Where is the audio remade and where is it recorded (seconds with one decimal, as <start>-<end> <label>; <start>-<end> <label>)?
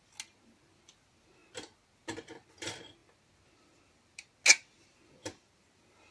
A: 0.0-6.1 recorded